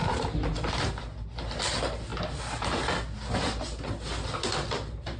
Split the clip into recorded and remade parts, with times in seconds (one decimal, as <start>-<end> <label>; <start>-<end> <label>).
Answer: 0.0-5.2 recorded